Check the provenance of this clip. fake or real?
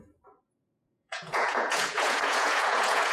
fake